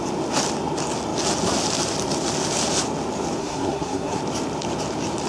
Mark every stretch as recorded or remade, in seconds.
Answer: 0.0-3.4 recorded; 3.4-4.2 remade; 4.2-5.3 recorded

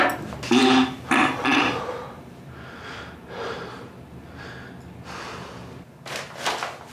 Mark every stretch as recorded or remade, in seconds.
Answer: 0.0-0.6 recorded; 0.6-4.7 remade; 4.7-6.9 recorded

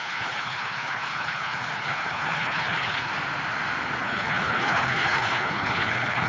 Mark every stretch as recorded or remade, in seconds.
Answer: 0.0-3.1 remade; 3.1-4.0 recorded; 4.0-6.3 remade

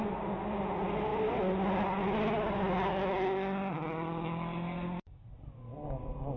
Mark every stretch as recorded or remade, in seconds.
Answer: 0.0-6.4 recorded

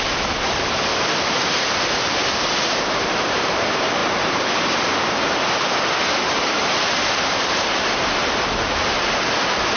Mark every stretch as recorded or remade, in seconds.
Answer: 0.0-0.9 remade; 0.9-1.4 recorded; 1.4-9.8 remade